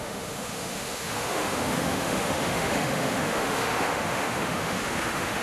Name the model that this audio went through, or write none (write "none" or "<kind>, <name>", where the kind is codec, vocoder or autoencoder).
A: autoencoder, DAC-VAE